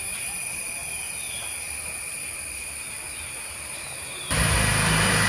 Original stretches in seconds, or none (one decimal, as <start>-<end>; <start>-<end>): 0.0-5.3